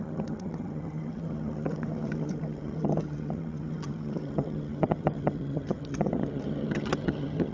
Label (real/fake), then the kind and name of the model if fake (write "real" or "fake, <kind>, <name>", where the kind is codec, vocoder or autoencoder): fake, vocoder, HiFi-GAN